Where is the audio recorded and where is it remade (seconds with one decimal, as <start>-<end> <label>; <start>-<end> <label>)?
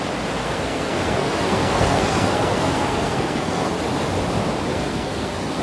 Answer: 0.0-0.4 recorded; 0.4-3.7 remade; 3.7-4.7 recorded; 4.7-5.6 remade